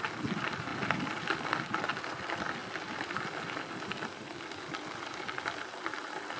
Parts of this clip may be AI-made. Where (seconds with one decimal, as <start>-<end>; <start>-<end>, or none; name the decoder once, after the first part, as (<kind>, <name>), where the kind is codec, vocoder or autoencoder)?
none